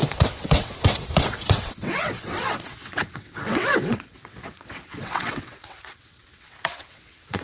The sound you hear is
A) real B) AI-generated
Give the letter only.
B